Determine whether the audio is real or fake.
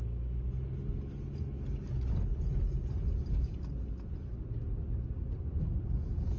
real